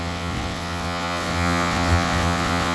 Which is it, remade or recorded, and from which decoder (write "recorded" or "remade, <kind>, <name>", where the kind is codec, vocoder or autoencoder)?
remade, vocoder, WaveNeXt